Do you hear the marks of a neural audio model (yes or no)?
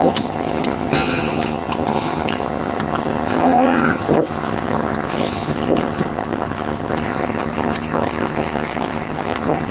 yes